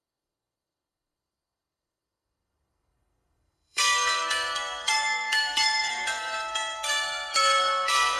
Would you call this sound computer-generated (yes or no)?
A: yes